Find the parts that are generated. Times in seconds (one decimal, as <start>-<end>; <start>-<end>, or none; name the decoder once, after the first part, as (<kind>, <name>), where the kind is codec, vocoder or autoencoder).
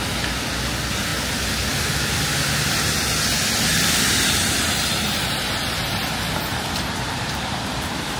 6.5-8.2 (vocoder, BigVGAN v2)